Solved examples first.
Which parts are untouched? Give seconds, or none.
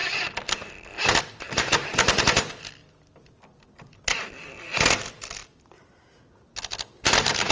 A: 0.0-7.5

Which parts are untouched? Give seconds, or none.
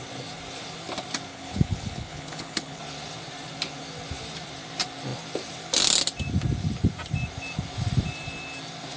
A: 0.0-1.3; 2.8-9.0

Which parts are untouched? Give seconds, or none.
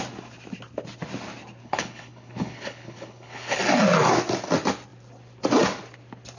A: 0.0-1.6; 3.6-6.4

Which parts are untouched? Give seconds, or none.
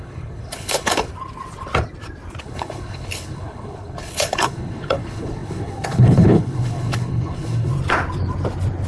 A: 1.1-2.4; 7.7-8.9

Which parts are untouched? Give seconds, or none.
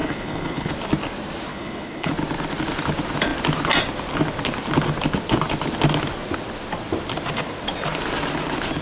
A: 0.7-1.5; 2.1-8.8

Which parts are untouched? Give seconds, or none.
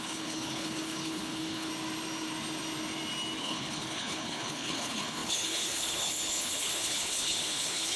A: 1.7-3.4